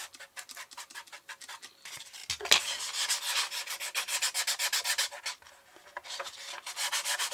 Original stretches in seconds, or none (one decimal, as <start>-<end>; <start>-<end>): 0.0-7.3